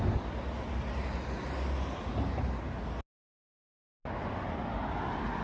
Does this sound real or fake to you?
real